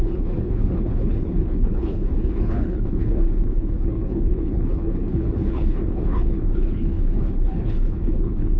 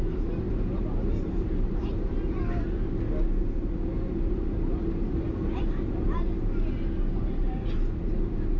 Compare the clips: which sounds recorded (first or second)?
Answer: second